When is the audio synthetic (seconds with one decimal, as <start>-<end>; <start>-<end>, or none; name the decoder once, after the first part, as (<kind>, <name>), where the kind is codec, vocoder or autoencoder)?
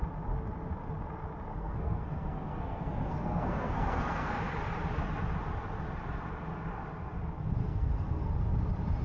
1.5-4.4 (codec, SNAC); 7.6-8.3